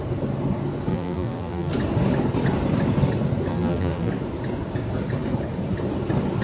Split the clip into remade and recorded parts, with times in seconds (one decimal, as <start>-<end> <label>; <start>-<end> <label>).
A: 0.0-0.9 recorded; 0.9-1.7 remade; 1.7-3.5 recorded; 3.5-4.1 remade; 4.1-6.4 recorded